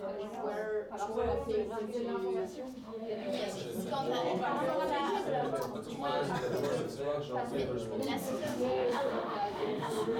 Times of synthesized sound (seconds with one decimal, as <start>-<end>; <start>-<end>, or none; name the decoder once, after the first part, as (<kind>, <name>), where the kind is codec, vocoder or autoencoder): 2.4-3.4 (autoencoder, DAC-VAE); 8.2-10.2